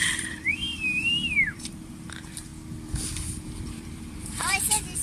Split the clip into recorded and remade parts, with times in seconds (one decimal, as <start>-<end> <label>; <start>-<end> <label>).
0.0-2.5 remade; 2.5-3.7 recorded; 3.7-5.0 remade